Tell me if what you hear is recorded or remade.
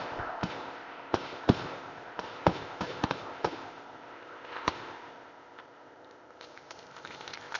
remade